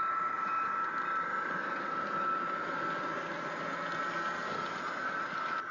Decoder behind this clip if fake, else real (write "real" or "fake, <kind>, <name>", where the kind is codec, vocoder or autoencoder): real